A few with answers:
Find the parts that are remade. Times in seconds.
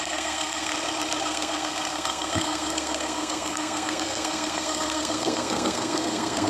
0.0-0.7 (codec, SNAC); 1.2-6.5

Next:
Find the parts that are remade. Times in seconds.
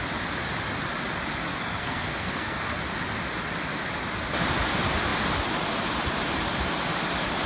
1.5-2.8 (codec, SNAC)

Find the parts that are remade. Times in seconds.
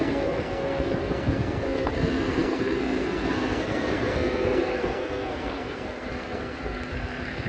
0.0-7.5 (codec, SNAC)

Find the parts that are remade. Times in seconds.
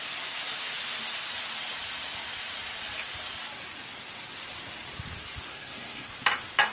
5.5-6.1 (codec, SNAC)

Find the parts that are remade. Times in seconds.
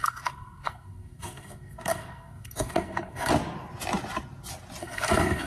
0.0-3.3 (codec, SNAC); 4.8-5.5